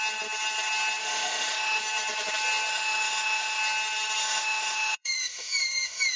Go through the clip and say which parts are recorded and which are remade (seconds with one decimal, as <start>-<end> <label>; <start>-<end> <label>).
0.0-1.0 recorded; 1.0-1.8 remade; 1.8-2.7 recorded; 2.7-3.6 remade; 3.6-4.2 recorded; 4.2-6.2 remade